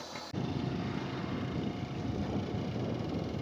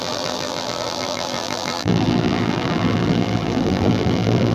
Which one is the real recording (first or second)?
first